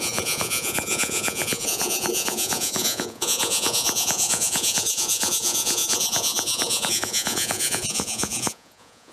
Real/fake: fake